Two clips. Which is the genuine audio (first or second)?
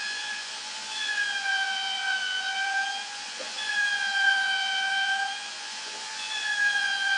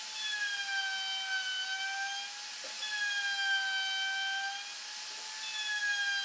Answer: second